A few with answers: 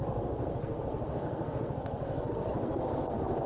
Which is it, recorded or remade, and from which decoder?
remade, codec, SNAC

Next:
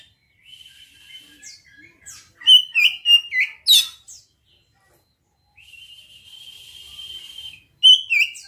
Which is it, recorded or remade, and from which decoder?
recorded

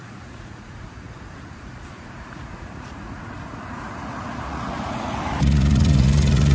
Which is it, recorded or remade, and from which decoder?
remade, vocoder, Vocos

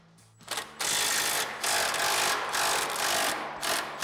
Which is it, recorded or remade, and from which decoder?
recorded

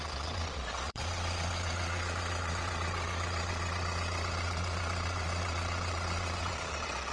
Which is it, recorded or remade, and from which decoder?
remade, vocoder, Vocos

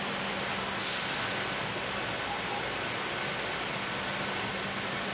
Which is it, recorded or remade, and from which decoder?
recorded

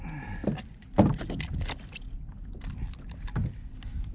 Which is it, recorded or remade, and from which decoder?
recorded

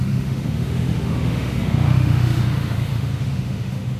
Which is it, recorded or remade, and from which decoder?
remade, autoencoder, DAC-VAE